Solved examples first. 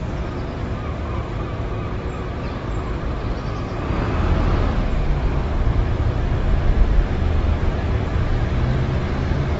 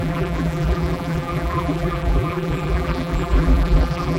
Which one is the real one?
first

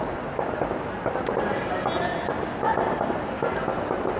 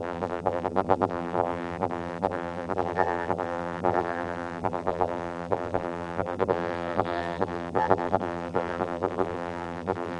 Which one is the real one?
first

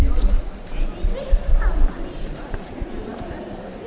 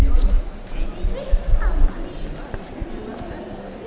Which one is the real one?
second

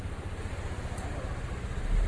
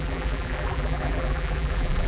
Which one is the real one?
first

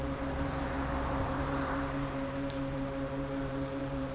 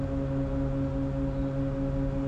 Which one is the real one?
second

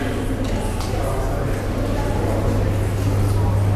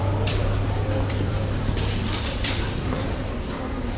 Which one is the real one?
first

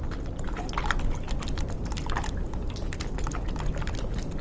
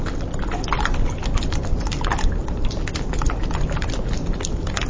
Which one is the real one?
first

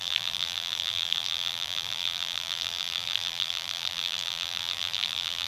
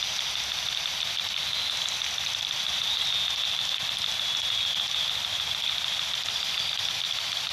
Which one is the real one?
second